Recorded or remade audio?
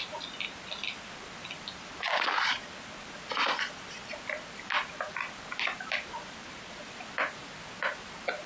recorded